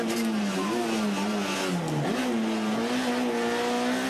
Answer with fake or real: real